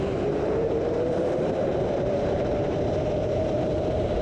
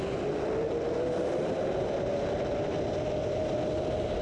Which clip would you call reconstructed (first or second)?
first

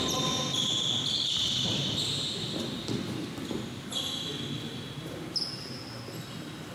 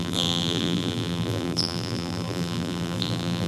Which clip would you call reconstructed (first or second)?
second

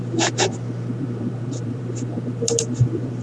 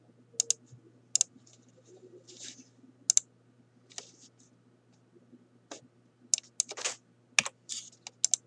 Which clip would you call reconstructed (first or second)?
first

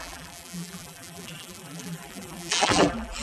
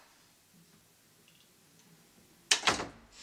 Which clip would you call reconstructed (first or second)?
first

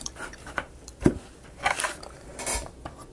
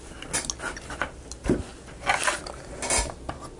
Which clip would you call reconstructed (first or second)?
first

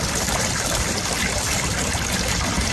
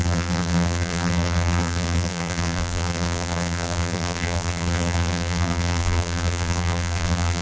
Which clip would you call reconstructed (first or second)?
second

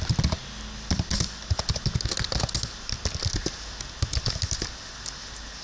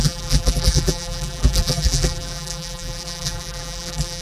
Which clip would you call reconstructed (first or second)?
second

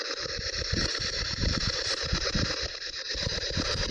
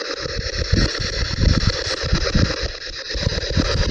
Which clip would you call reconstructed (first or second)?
first